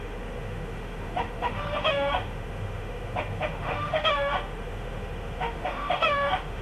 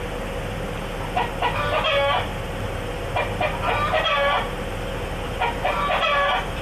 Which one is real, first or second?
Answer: second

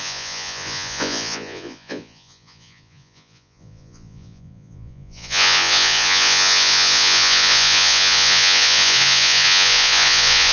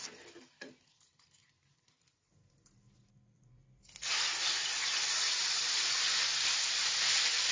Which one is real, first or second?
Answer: second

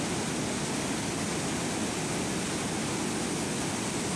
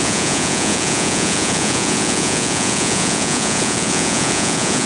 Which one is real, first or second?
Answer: first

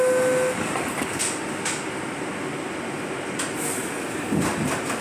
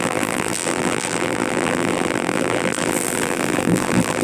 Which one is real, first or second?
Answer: first